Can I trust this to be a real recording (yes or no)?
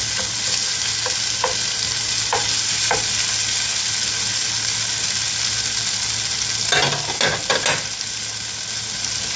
yes